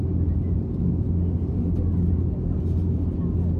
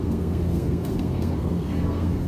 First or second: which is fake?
second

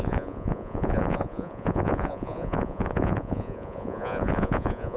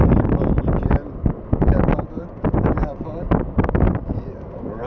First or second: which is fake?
first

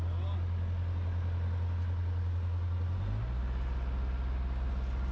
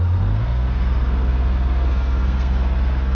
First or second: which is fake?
second